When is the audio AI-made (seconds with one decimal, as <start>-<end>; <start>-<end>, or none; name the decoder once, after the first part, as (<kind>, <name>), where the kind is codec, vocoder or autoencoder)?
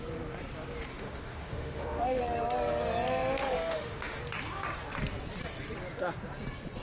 0.9-2.2 (autoencoder, DAC-VAE); 3.4-4.2